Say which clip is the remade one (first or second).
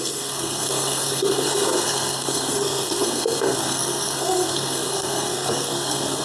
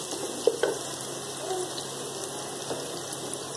first